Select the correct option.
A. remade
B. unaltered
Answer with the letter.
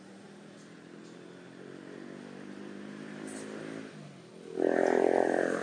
B